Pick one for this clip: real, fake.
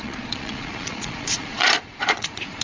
fake